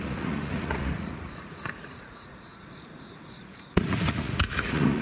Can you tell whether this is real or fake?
fake